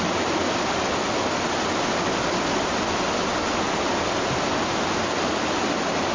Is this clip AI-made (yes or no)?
no